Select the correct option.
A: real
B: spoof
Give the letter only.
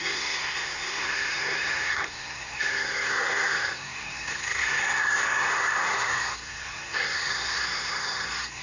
B